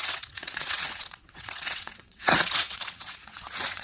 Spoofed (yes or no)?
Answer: yes